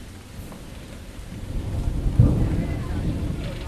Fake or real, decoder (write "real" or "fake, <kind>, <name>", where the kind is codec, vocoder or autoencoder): fake, vocoder, BigVGAN v2